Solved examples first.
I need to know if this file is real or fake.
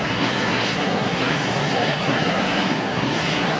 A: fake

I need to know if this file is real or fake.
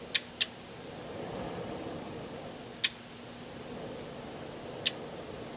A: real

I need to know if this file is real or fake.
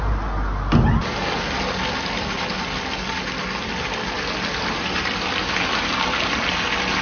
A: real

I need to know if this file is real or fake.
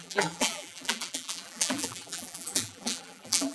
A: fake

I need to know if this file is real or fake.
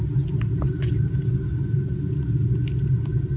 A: real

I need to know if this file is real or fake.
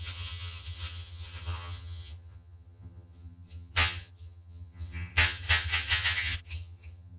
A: fake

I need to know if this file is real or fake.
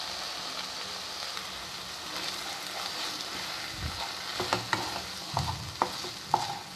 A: real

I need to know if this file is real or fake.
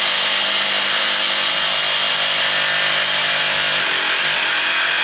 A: real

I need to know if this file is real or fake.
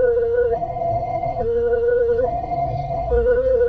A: fake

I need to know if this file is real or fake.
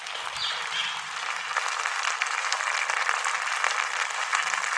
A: real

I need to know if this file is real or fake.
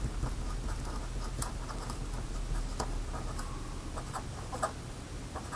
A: real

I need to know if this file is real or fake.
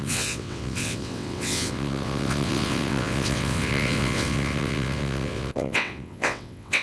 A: fake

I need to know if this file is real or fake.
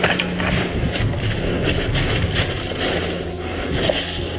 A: real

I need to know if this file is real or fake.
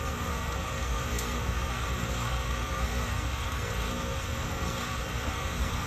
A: fake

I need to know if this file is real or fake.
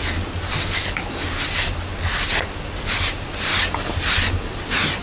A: real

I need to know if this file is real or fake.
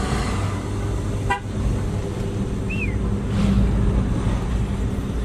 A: real